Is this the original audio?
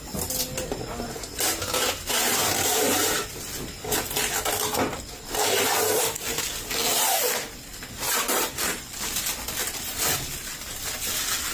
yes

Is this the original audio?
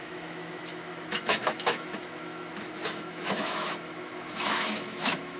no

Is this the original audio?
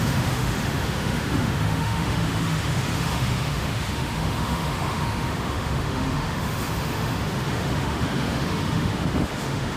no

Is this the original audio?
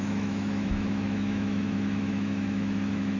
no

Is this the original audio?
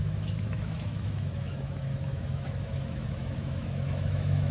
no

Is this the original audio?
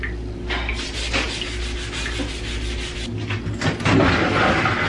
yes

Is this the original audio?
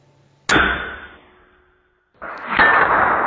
yes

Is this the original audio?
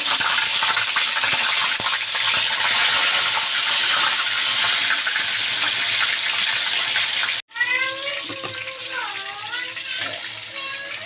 yes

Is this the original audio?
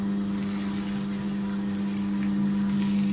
yes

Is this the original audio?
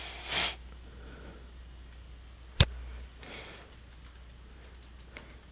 yes